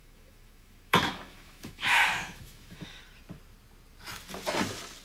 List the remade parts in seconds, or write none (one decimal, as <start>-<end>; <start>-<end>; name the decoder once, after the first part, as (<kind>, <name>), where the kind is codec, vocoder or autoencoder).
0.0-3.0 (autoencoder, DAC-VAE)